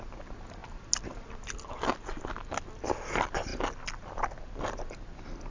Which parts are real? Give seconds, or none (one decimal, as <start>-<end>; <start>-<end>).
0.0-5.5